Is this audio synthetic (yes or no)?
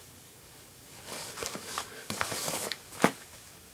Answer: yes